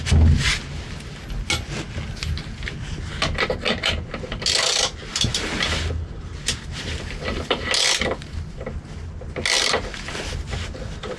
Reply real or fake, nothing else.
real